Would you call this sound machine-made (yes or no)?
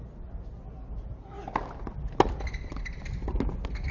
no